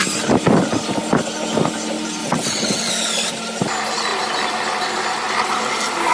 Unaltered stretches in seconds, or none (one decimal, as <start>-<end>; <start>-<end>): 0.0-2.2; 2.9-6.1